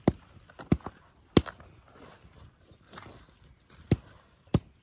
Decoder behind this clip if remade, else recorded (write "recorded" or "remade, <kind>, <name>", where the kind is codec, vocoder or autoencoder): recorded